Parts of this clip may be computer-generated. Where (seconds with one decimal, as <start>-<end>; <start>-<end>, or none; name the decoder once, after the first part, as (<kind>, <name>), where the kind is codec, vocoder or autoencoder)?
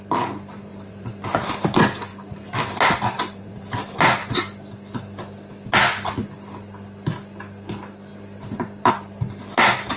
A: 0.7-1.5 (vocoder, BigVGAN v2); 2.1-4.3; 8.1-8.9